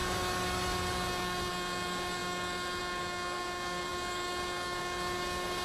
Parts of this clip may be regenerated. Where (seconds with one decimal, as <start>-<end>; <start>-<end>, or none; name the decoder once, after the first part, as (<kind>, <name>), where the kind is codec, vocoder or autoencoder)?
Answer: 0.0-5.6 (codec, DAC)

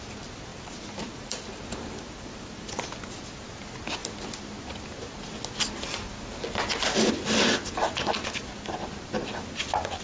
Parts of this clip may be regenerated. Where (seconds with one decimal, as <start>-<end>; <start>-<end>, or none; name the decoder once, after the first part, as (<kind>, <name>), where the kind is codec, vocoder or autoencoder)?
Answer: 0.5-2.7 (vocoder, BigVGAN v2)

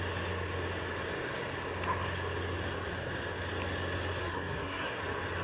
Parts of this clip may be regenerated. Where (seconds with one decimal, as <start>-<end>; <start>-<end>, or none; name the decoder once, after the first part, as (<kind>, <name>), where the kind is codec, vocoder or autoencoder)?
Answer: 4.2-5.0 (codec, SNAC)